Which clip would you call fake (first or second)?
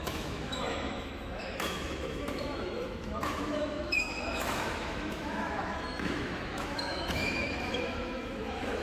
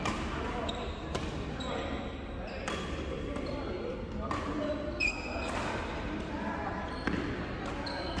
first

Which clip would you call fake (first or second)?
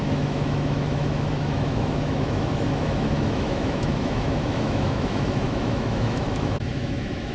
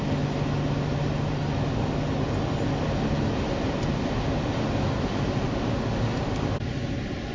first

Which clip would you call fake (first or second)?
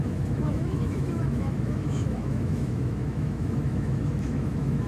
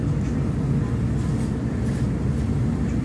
first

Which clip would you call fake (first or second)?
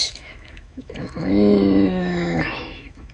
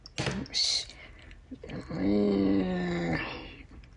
first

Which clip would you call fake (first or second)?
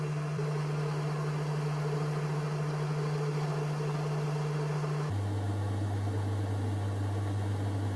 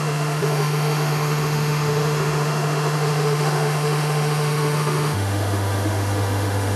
second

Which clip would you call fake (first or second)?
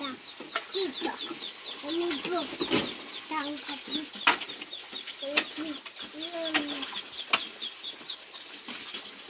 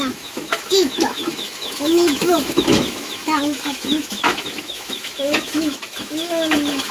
second